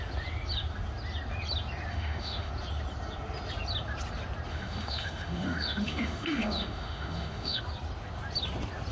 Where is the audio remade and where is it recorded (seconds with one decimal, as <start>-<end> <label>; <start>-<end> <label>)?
0.0-1.9 recorded; 1.9-2.5 remade; 2.5-4.5 recorded; 4.5-7.6 remade; 7.6-8.9 recorded